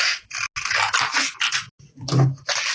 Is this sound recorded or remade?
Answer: recorded